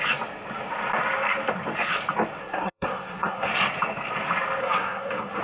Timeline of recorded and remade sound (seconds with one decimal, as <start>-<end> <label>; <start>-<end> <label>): 0.0-2.4 recorded; 2.4-3.5 remade; 3.5-4.6 recorded; 4.6-5.4 remade